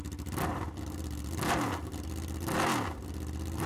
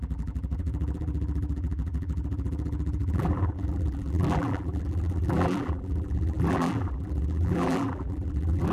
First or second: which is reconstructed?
second